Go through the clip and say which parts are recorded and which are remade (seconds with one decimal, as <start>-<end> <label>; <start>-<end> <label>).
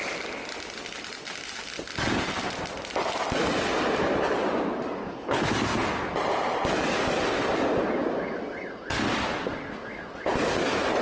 0.0-5.0 recorded; 5.0-5.5 remade; 5.5-11.0 recorded